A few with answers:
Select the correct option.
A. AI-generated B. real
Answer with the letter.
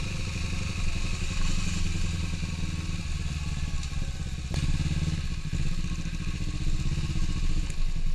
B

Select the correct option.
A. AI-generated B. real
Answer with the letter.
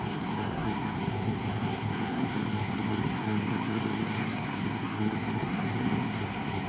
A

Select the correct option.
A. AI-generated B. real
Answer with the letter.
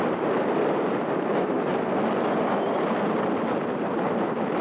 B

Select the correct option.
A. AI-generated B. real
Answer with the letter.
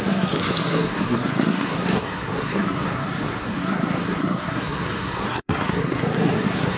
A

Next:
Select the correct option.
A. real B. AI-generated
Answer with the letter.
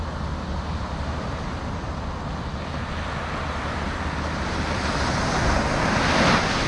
A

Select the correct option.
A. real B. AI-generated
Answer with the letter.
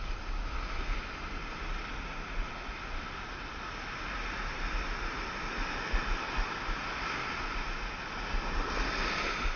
A